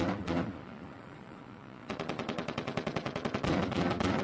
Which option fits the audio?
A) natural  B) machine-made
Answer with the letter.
B